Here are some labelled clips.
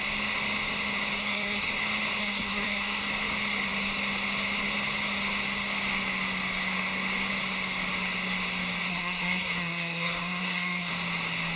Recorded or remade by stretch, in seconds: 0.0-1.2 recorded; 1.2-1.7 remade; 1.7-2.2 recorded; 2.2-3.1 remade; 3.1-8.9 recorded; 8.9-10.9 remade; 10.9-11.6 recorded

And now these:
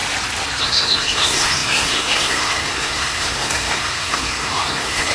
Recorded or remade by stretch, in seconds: 0.0-0.6 recorded; 0.6-5.1 remade

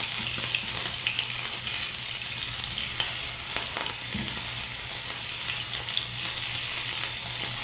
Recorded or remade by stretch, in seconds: 0.0-7.6 recorded

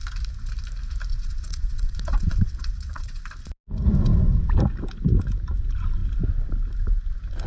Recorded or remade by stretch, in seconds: 0.0-1.1 recorded; 1.1-3.2 remade; 3.2-7.5 recorded

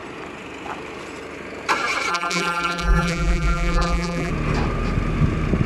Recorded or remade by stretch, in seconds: 0.0-2.1 recorded; 2.1-4.3 remade; 4.3-5.7 recorded

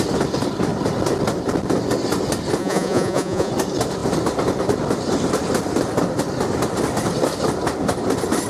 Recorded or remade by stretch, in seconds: 0.0-2.6 recorded; 2.6-3.5 remade; 3.5-8.5 recorded

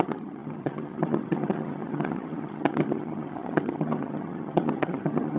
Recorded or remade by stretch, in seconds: 0.0-5.4 remade